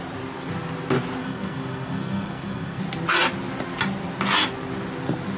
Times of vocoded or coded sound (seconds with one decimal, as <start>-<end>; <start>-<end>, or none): 1.2-2.8